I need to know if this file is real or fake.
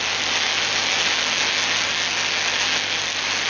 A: real